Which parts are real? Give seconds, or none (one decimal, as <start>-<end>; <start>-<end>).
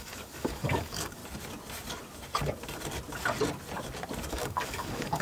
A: 1.2-4.3